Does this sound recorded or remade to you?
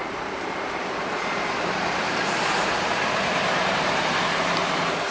remade